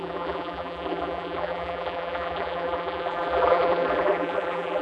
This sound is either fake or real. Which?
fake